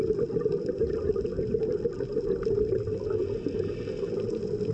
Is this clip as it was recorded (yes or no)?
yes